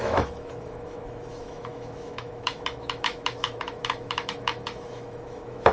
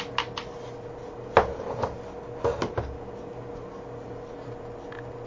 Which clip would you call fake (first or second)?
first